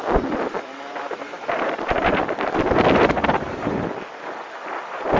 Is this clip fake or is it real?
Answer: fake